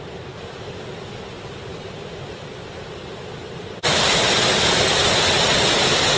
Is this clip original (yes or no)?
yes